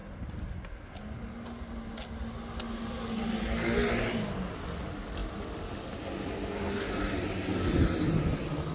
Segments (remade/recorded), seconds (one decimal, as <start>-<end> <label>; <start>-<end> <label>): 0.0-8.7 recorded